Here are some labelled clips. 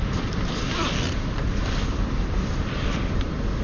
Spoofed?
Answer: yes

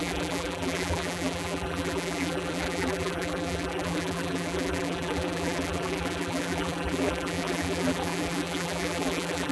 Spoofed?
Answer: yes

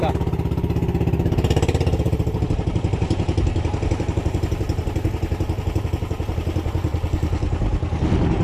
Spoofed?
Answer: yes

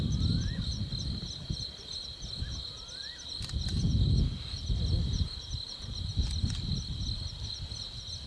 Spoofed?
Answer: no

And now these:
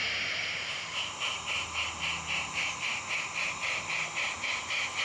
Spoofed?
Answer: no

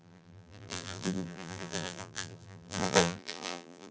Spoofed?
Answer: yes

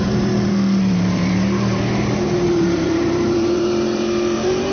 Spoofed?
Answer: yes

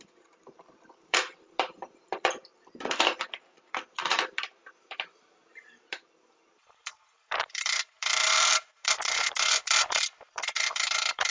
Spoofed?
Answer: yes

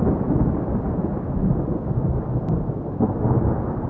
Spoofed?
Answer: no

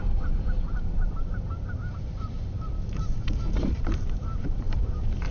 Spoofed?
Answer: yes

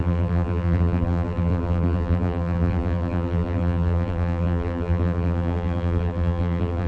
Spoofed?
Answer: yes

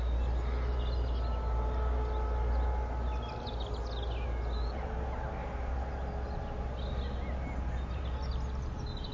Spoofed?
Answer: no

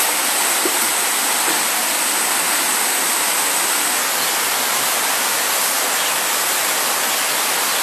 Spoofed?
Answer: no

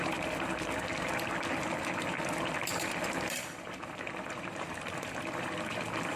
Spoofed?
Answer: yes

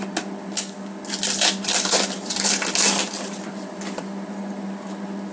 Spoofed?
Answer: no